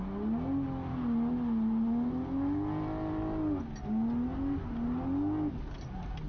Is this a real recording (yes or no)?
yes